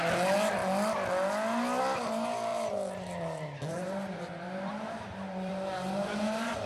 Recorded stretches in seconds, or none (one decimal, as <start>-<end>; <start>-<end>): 0.0-2.5